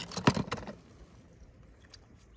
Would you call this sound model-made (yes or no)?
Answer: no